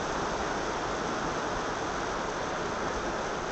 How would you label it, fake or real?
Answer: real